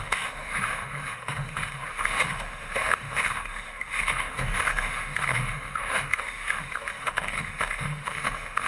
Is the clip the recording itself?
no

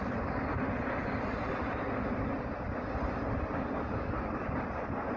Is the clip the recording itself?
yes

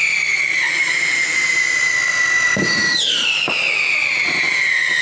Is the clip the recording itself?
yes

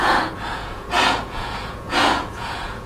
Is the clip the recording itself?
no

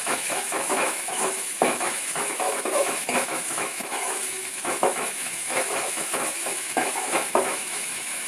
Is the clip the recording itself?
no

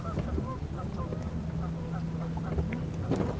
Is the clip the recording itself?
yes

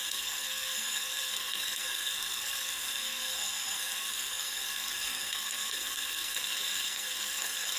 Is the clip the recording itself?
no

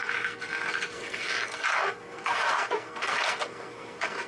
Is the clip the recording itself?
no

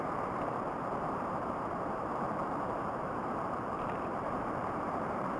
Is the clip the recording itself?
no